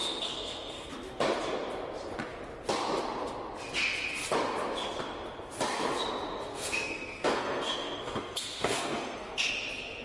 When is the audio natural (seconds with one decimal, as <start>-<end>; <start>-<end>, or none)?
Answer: 0.9-6.5; 9.5-10.0